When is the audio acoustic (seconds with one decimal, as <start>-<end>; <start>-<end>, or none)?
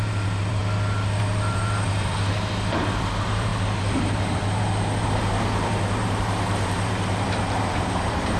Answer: 0.6-1.2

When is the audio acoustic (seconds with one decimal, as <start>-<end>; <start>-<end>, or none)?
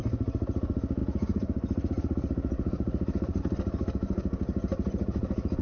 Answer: 0.0-1.0; 3.4-5.6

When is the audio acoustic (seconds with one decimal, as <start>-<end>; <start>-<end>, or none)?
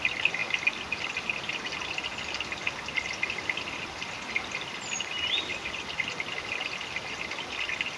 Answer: 0.0-8.0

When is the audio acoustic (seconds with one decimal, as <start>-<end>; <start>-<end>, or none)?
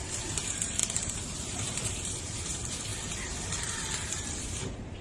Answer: none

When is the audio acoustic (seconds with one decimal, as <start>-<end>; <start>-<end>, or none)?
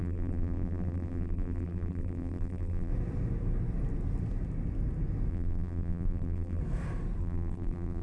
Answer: 2.9-5.3; 6.6-7.2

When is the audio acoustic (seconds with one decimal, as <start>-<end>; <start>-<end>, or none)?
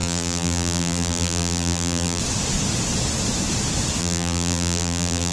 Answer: 2.2-4.0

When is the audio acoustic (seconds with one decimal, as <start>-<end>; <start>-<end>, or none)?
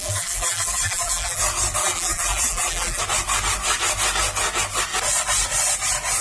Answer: 1.4-1.8; 3.0-6.2